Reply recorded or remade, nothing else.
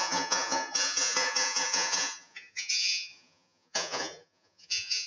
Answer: remade